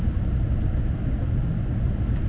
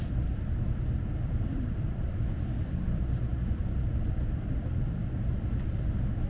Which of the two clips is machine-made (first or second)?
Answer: second